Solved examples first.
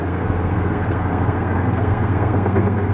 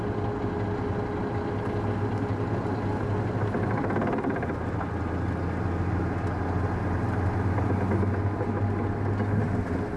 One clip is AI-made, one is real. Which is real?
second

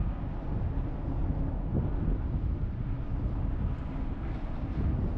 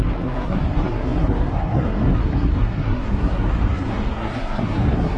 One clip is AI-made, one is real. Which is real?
first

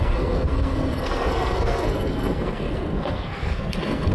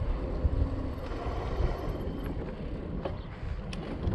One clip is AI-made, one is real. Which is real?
second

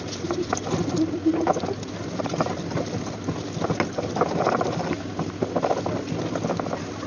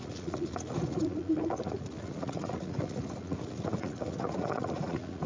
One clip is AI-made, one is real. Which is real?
first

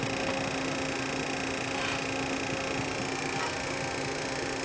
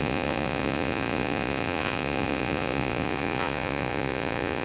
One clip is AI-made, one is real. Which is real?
first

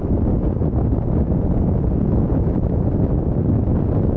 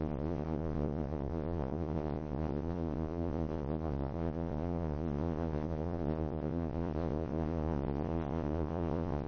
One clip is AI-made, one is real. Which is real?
first